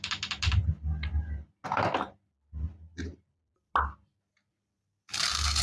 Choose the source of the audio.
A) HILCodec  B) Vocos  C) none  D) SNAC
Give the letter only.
C